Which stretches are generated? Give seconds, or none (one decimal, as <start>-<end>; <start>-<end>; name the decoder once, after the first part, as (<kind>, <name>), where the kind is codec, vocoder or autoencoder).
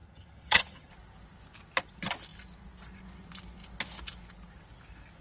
0.0-0.9 (vocoder, HiFi-GAN)